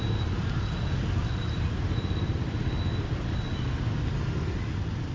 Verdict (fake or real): real